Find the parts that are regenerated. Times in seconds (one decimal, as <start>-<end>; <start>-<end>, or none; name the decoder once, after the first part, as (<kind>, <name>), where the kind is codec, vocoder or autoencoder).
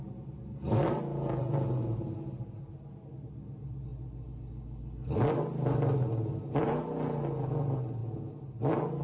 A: none